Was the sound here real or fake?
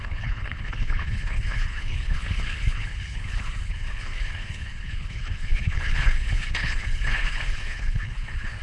fake